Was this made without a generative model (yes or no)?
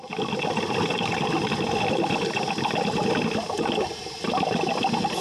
yes